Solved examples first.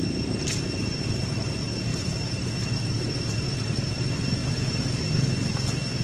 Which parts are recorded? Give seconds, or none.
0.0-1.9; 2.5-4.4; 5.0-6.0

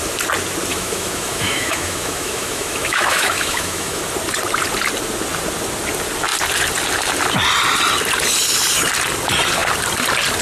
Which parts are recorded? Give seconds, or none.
0.0-0.7; 4.0-10.4

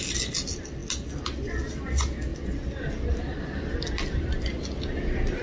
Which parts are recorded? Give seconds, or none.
0.0-5.4

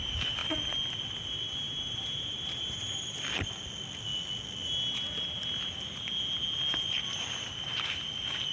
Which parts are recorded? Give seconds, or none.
0.0-8.5

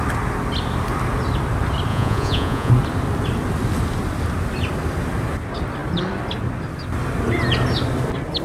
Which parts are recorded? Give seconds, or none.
0.0-1.9; 2.7-8.4

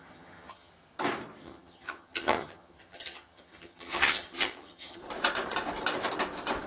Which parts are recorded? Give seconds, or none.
0.7-1.4; 5.0-6.7

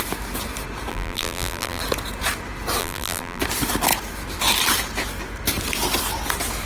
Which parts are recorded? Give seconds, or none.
0.0-0.9; 1.8-2.8; 3.4-6.7